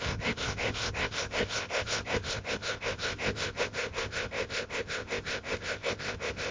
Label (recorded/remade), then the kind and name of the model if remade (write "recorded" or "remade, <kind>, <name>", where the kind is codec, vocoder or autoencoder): remade, codec, ZipCodec